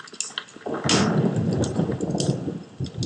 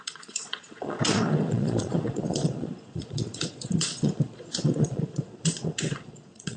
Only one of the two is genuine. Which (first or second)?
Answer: first